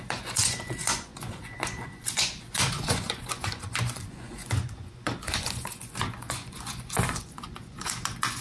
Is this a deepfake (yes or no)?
yes